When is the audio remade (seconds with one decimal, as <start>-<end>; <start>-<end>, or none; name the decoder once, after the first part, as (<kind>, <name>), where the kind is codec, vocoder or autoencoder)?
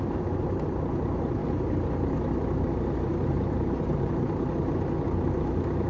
3.1-4.5 (vocoder, BigVGAN v2)